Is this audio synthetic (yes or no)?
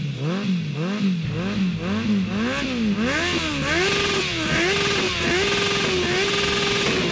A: no